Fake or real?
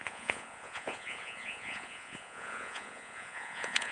fake